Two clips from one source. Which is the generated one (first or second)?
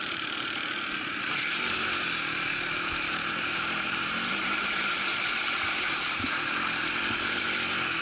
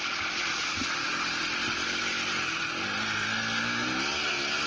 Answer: first